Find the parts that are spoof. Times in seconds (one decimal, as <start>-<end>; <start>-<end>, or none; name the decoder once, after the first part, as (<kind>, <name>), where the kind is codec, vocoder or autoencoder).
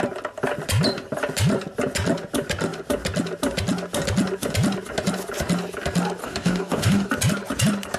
6.2-7.1 (codec, DAC)